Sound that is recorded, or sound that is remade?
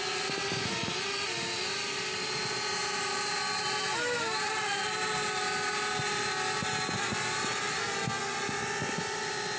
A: recorded